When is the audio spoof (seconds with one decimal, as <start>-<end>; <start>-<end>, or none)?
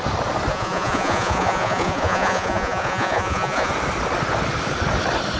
0.5-3.7